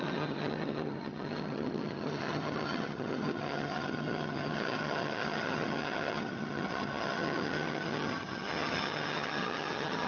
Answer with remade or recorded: remade